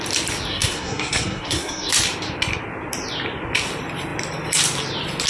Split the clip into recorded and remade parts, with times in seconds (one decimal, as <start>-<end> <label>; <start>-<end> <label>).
0.0-0.5 recorded; 0.5-1.9 remade; 1.9-5.3 recorded